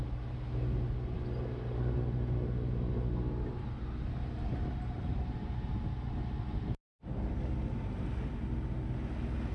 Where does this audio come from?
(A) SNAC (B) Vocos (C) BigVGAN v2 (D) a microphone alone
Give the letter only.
D